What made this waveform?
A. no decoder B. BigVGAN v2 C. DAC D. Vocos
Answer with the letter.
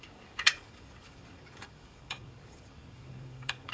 C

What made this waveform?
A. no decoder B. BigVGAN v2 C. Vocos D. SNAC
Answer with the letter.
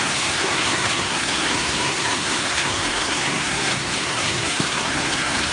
D